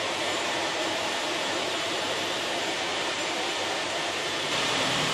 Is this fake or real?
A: fake